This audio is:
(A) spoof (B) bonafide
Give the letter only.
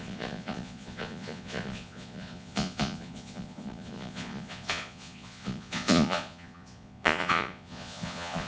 A